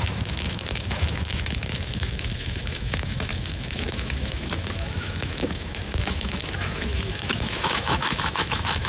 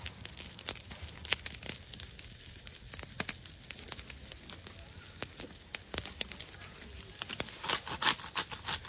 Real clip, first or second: second